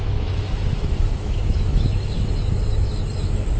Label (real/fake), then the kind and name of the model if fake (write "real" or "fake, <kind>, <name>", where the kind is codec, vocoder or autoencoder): fake, autoencoder, DAC-VAE